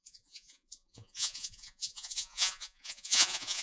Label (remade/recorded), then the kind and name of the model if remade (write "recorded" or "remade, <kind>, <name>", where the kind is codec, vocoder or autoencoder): remade, vocoder, Vocos